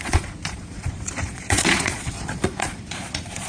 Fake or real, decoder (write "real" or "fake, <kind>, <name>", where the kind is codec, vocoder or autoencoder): fake, vocoder, Vocos